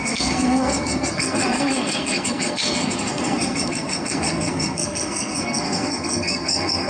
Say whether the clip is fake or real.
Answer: fake